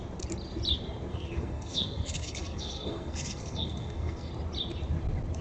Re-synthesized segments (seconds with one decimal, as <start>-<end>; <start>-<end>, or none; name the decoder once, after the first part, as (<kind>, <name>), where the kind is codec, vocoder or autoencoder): 1.1-4.3 (codec, SNAC)